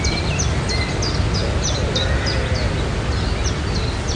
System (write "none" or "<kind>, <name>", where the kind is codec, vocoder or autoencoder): none